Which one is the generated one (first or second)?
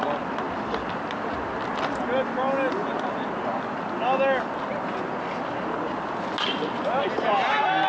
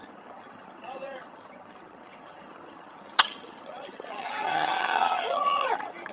second